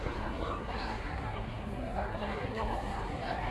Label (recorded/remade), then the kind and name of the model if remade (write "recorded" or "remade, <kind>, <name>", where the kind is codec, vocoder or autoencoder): remade, codec, SNAC